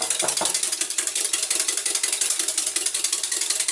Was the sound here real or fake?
real